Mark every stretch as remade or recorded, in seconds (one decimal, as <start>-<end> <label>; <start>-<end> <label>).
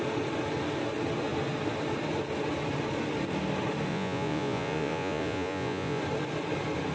0.0-3.9 recorded; 3.9-6.0 remade; 6.0-6.9 recorded